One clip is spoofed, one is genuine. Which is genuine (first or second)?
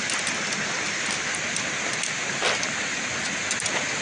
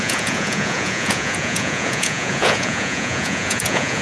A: first